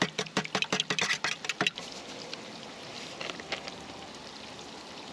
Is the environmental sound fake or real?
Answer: real